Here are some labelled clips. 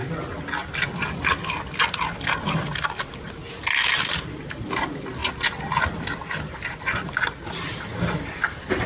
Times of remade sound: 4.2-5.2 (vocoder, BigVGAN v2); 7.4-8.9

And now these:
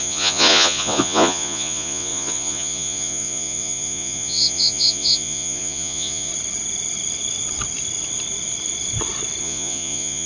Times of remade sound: 0.0-6.3 (vocoder, Vocos); 9.4-10.3